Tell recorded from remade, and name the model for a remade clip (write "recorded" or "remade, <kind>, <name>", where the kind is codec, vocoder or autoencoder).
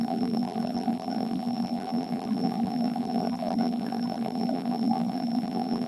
remade, vocoder, BigVGAN v2